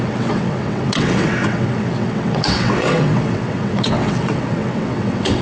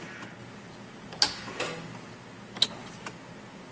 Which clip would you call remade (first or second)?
first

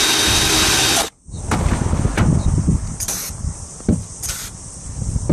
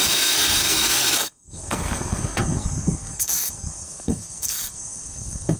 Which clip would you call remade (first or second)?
second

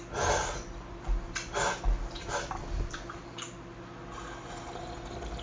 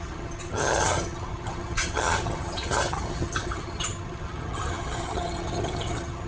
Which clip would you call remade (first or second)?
second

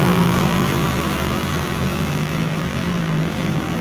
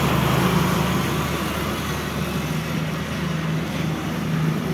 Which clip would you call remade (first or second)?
first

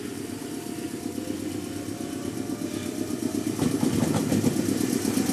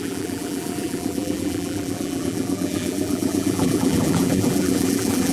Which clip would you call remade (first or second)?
second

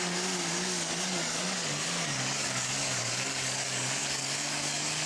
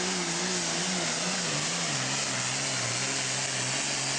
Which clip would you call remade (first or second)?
first